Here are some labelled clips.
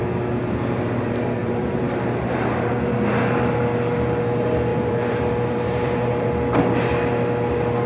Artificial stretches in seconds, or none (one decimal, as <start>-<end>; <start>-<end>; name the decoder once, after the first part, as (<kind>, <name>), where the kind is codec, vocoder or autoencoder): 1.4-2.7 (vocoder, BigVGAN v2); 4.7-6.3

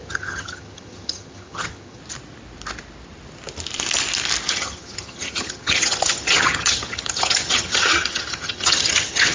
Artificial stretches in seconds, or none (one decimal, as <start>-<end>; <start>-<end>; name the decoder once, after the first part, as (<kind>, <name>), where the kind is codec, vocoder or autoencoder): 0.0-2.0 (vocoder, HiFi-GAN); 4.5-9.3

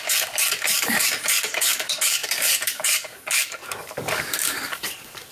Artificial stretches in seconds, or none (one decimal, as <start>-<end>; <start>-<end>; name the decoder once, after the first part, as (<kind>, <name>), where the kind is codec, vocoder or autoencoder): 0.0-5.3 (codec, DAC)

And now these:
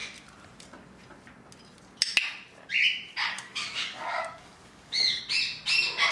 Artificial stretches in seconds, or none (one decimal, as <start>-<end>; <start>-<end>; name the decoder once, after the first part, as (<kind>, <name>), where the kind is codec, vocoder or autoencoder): 3.1-5.2 (codec, DAC)